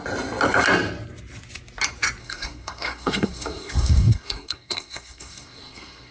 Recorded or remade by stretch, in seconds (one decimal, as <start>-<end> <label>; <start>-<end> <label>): 0.0-2.2 recorded; 2.2-6.1 remade